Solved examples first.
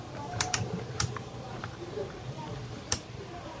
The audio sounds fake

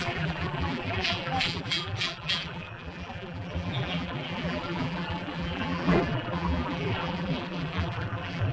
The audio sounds fake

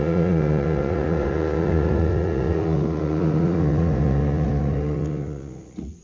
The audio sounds fake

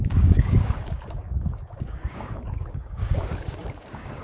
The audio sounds fake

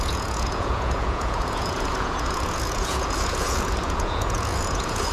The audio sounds fake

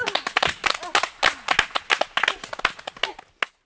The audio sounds real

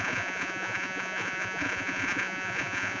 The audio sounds fake